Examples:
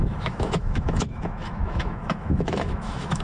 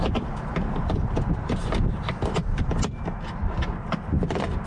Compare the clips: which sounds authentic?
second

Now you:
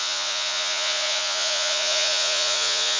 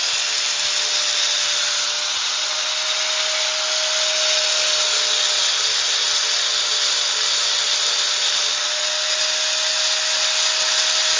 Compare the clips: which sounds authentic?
second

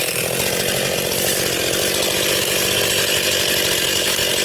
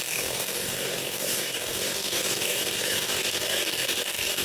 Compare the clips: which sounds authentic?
first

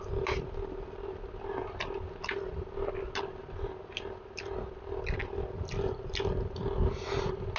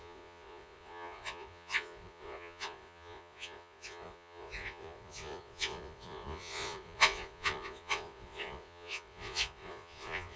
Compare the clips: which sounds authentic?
first